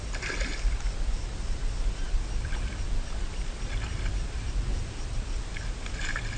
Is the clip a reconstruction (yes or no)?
no